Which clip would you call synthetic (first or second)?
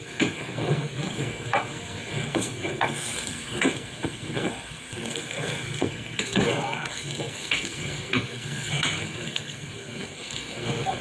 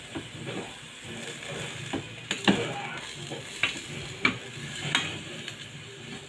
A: first